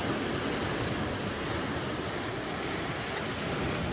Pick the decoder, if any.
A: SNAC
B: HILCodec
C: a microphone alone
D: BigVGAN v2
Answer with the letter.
C